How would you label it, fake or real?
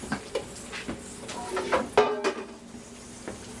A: real